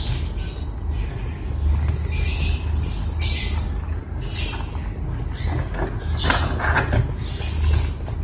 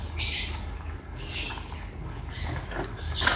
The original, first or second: first